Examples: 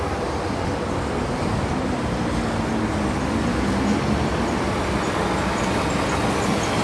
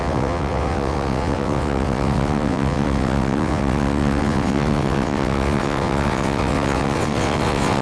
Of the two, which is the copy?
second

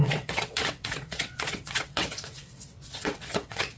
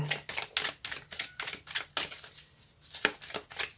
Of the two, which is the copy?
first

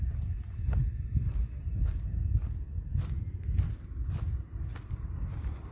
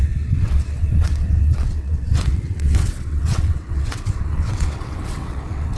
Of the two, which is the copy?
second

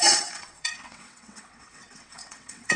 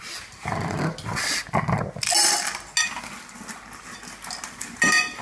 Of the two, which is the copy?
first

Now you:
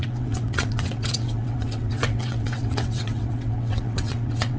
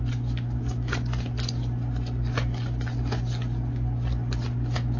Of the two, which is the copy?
first